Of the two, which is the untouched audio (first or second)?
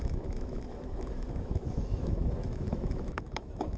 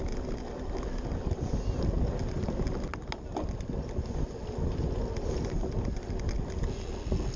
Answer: second